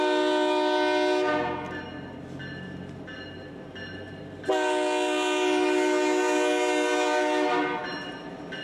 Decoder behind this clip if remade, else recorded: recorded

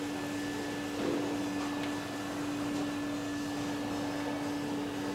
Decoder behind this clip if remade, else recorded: recorded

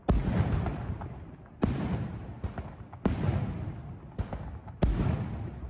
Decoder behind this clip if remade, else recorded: recorded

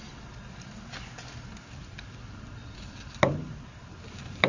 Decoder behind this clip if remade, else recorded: recorded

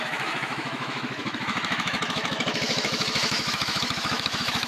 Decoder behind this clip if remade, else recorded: remade, autoencoder, DAC-VAE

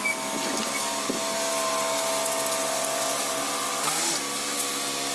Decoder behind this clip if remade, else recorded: recorded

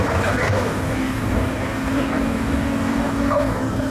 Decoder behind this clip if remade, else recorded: remade, codec, DAC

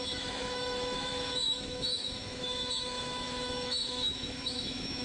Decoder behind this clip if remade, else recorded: remade, autoencoder, DAC-VAE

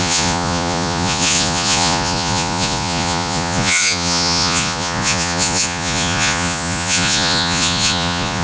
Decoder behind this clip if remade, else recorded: remade, vocoder, Vocos